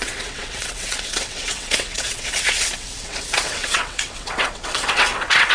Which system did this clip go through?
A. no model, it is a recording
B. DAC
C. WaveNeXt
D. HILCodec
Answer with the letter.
C